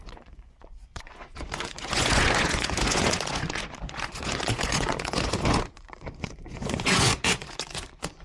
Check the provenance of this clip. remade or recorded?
remade